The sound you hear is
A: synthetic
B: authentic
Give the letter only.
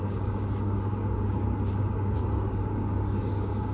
A